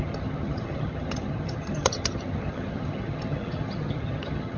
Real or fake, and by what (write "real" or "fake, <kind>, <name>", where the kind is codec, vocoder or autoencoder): fake, vocoder, HiFi-GAN